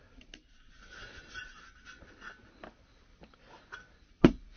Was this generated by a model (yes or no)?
no